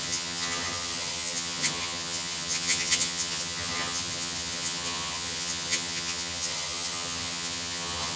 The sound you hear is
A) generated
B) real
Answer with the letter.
A